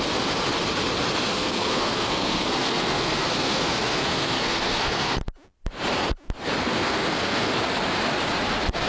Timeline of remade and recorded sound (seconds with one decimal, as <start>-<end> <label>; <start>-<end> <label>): 0.0-1.3 recorded; 1.3-5.2 remade; 5.2-6.6 recorded; 6.6-7.5 remade; 7.5-8.9 recorded